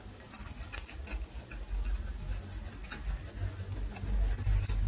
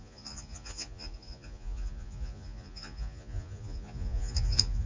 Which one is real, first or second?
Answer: first